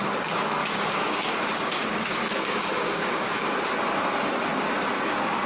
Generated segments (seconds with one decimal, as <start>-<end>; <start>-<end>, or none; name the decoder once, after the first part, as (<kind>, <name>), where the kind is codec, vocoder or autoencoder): 0.6-3.5 (codec, DAC)